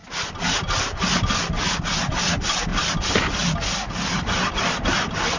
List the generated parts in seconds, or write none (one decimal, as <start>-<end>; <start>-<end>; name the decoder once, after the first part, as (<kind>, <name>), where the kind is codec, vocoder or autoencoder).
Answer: none